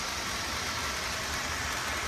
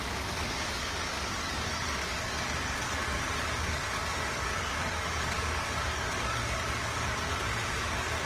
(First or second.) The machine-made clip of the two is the second